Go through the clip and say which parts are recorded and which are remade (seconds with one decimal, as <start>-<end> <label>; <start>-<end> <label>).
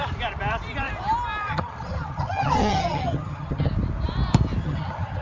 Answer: 0.0-1.4 recorded; 1.4-3.7 remade; 3.7-4.6 recorded; 4.6-5.2 remade